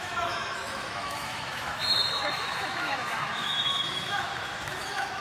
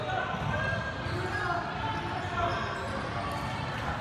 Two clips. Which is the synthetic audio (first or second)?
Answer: first